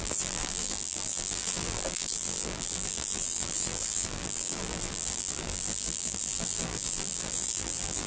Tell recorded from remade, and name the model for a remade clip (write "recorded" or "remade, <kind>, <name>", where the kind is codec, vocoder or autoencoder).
remade, vocoder, BigVGAN v2